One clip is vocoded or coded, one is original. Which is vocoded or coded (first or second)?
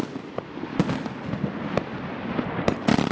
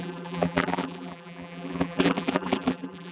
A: second